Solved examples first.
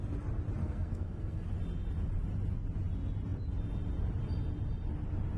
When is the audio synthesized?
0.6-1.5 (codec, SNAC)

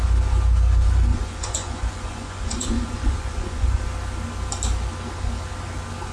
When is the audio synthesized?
1.1-3.8 (vocoder, Vocos)

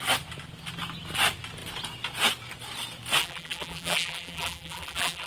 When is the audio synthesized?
3.2-5.3 (vocoder, BigVGAN v2)

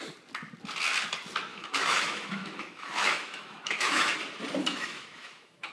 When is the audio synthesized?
1.5-4.1 (autoencoder, DAC-VAE); 4.6-5.7

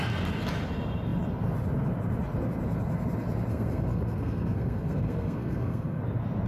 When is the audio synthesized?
3.5-6.0 (codec, SNAC)

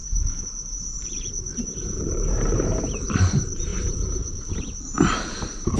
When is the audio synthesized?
0.0-5.8 (vocoder, BigVGAN v2)

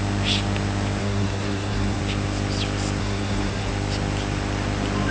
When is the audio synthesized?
1.0-2.0 (codec, SNAC); 3.0-3.7